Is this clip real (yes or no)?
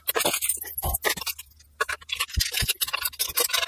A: yes